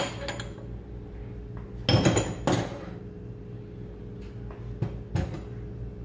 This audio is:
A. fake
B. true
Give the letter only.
B